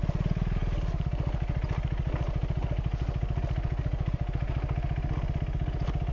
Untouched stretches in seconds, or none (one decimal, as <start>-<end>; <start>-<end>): 0.0-6.1

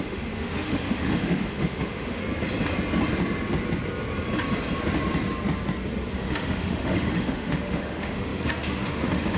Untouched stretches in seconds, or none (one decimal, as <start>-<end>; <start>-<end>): 2.2-6.1